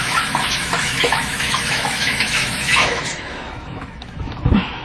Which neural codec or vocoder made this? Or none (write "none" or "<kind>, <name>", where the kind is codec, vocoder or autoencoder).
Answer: autoencoder, DAC-VAE